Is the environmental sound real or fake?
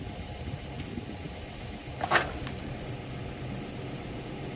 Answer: real